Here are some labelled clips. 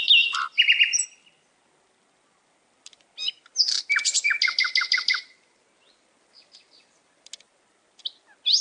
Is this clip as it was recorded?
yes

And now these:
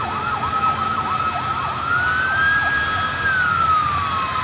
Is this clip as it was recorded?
yes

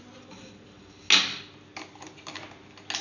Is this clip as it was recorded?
yes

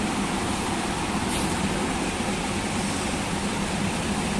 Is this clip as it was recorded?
yes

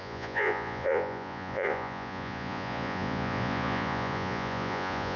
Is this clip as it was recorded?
no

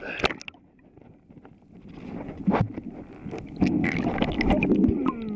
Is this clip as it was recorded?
yes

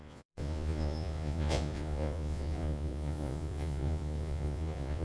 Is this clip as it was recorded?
no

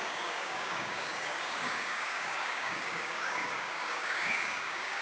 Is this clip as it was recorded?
no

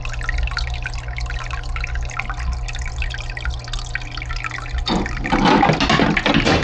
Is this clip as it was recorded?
yes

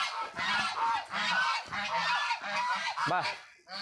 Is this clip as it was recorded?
yes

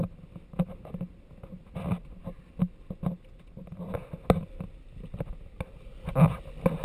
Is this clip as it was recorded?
yes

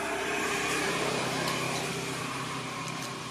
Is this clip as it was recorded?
no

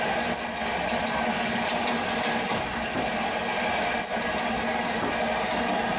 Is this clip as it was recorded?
yes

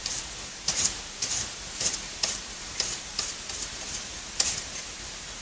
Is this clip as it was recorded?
no